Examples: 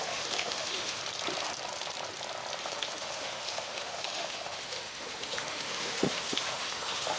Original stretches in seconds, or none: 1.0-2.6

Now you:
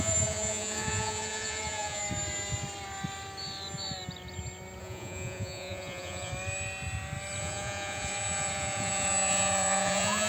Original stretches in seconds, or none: 2.0-4.8; 6.3-7.4

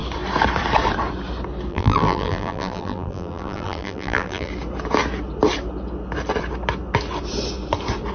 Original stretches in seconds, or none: 0.0-1.7; 4.5-8.1

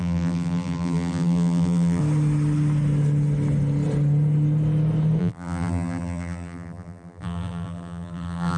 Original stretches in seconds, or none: 2.0-5.2

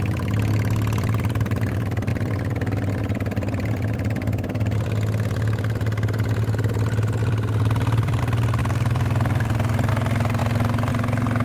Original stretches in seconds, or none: 0.0-2.1; 2.9-7.2; 8.2-8.6; 9.9-11.4